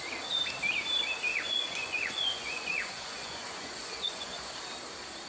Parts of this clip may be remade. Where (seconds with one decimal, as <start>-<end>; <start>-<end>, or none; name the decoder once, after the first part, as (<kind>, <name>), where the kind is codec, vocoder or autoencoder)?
1.3-4.5 (vocoder, Vocos)